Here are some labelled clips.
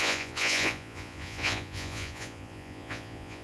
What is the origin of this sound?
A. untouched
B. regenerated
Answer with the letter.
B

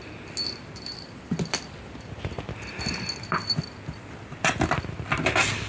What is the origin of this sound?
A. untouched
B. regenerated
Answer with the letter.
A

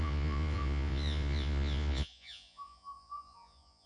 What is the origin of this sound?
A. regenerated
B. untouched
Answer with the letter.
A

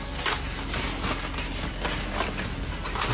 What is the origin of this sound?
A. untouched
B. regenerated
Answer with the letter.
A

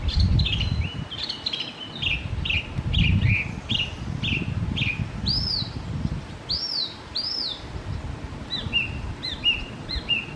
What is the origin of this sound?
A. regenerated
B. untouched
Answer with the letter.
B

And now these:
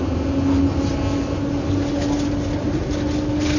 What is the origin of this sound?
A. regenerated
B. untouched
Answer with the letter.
B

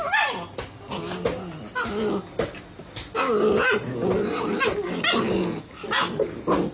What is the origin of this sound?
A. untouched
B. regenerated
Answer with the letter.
A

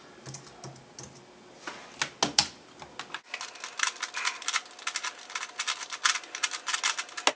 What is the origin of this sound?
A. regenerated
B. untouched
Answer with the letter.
B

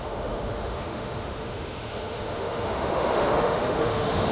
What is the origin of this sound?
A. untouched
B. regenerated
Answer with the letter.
B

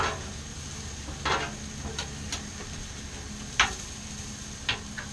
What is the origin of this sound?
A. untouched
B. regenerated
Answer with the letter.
A